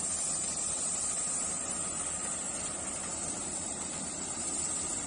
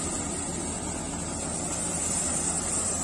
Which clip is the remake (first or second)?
first